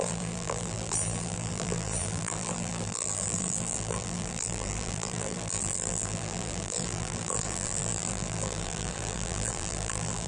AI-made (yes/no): yes